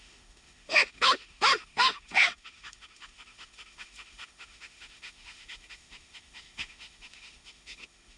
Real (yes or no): no